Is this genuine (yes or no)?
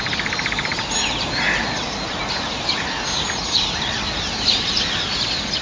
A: yes